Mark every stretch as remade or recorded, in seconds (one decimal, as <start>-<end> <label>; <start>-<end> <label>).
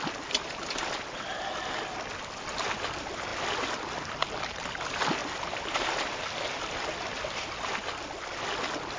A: 0.0-9.0 recorded